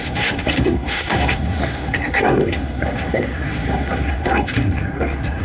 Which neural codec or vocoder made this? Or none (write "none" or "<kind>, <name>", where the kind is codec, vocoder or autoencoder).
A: codec, SNAC